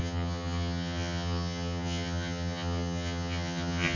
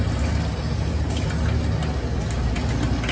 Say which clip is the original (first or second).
second